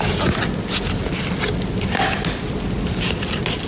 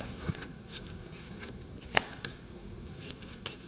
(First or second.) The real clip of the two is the first